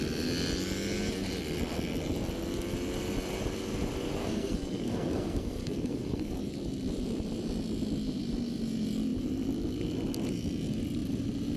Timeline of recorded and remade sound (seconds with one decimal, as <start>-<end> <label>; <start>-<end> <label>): 0.0-4.2 recorded; 4.2-6.4 remade; 6.4-11.6 recorded